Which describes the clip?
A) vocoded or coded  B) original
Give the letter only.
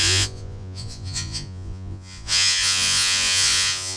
A